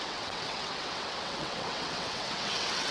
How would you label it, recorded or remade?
remade